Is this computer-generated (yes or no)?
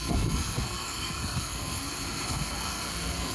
yes